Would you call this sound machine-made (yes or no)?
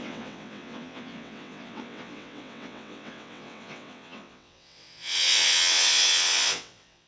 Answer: yes